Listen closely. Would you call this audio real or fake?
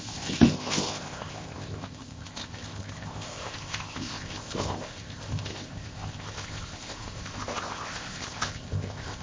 fake